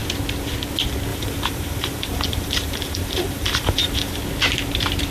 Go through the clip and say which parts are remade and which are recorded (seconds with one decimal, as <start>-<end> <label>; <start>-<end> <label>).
0.0-1.1 recorded; 1.1-4.2 remade; 4.2-5.1 recorded